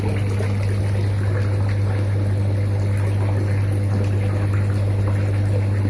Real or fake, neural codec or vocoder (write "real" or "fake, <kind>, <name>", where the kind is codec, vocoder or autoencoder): real